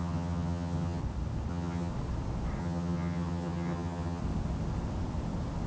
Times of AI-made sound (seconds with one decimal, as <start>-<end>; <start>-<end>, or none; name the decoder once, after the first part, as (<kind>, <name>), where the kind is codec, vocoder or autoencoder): 0.0-1.0 (vocoder, HiFi-GAN); 1.5-1.9; 2.6-4.2